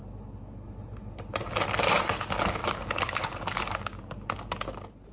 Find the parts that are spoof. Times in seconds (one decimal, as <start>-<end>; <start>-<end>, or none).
2.6-3.7